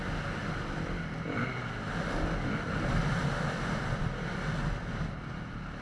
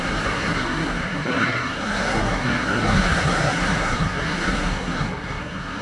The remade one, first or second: second